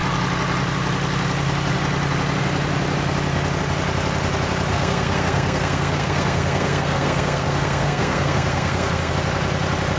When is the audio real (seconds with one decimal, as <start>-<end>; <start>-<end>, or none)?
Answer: 0.0-4.7; 9.1-10.0